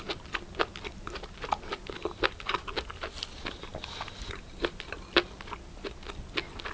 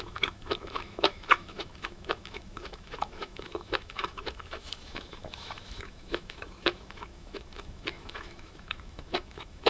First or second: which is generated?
second